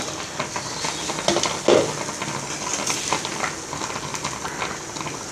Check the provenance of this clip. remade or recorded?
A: recorded